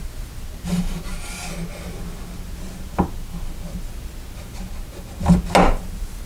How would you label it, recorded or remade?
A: recorded